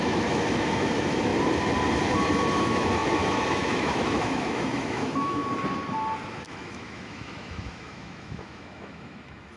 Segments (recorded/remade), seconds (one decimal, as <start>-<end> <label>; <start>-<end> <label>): 0.0-1.3 remade; 1.3-2.6 recorded; 2.6-5.4 remade; 5.4-6.3 recorded; 6.3-9.6 remade